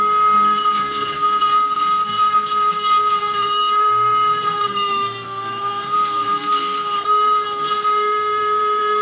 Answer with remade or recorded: remade